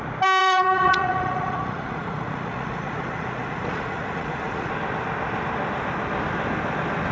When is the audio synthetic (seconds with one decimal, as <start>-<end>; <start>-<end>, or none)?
0.4-4.7